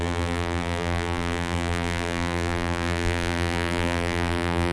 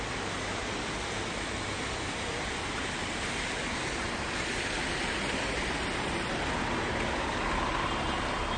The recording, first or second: second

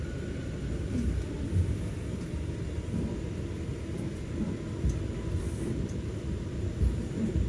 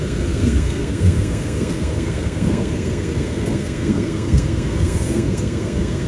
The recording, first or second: first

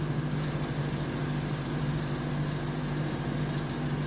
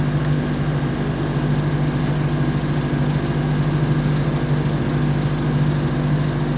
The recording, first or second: second